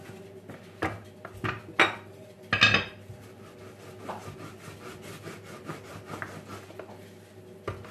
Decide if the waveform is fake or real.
real